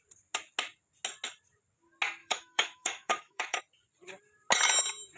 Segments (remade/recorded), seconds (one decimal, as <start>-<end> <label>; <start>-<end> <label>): 0.0-2.2 recorded; 2.2-3.6 remade; 3.6-5.2 recorded